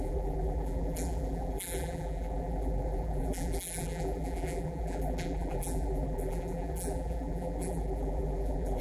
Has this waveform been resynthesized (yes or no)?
yes